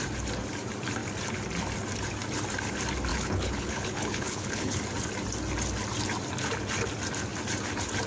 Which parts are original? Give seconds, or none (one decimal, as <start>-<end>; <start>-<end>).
0.0-3.1; 4.8-8.1